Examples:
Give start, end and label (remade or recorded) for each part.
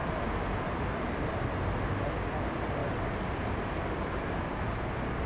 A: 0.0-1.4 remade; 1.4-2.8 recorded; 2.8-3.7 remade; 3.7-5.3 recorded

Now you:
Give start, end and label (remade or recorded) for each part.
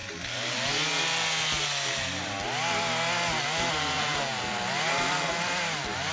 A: 0.0-4.3 recorded; 4.3-6.1 remade